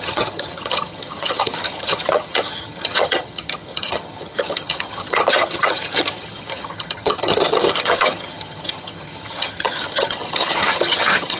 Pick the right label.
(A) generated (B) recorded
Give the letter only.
A